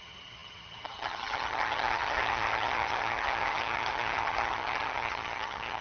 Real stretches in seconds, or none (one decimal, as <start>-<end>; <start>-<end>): none